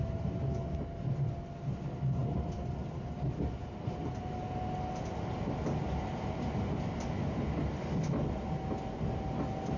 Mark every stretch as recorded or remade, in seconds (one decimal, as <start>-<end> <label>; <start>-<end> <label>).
0.0-9.8 recorded